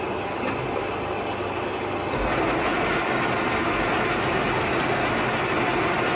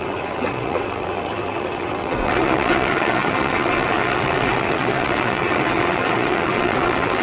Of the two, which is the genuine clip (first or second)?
first